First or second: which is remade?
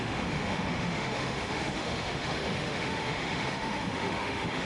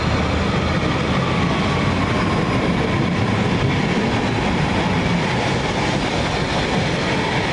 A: first